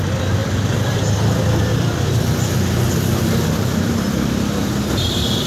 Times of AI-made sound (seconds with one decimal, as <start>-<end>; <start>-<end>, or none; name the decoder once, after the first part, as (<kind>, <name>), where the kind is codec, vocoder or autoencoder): 0.4-0.9 (vocoder, BigVGAN v2); 1.7-5.0